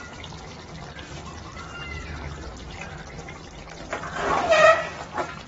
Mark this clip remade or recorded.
recorded